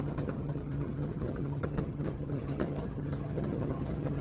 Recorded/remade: remade